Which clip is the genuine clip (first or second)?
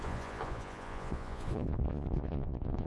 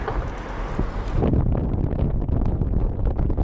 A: second